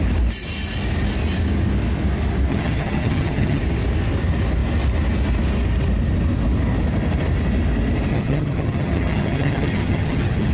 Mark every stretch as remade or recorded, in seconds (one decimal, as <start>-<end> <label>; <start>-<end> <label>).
0.0-2.5 recorded; 2.5-3.6 remade; 3.6-8.1 recorded; 8.1-10.5 remade